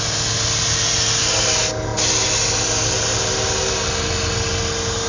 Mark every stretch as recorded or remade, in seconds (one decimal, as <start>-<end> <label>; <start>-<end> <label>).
0.0-5.1 recorded

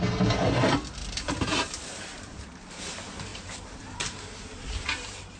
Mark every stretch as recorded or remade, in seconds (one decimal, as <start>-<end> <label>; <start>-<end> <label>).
0.0-1.0 recorded; 1.0-2.4 remade; 2.4-3.3 recorded; 3.3-5.4 remade

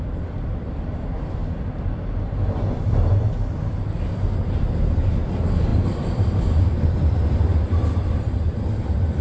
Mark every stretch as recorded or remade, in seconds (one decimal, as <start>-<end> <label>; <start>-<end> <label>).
0.0-1.4 remade; 1.4-3.5 recorded; 3.5-9.2 remade

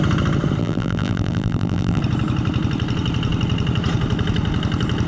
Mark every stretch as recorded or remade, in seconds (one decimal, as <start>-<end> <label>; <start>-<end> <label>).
0.0-0.6 recorded; 0.6-2.0 remade; 2.0-5.1 recorded

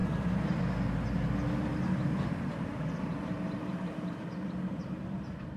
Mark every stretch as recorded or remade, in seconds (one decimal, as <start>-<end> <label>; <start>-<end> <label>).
0.0-0.6 remade; 0.6-1.7 recorded; 1.7-5.1 remade; 5.1-5.6 recorded